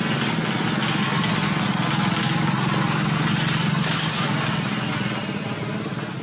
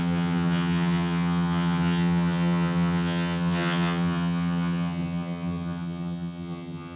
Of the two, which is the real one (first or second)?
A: first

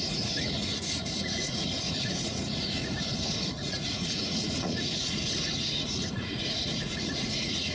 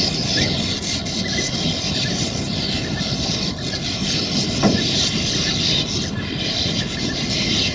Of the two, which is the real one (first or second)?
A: second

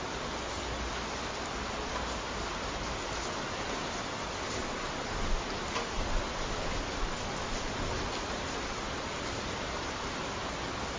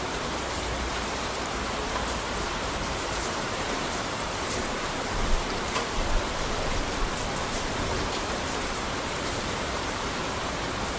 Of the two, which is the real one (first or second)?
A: first